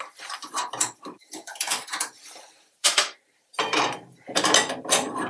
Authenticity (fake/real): fake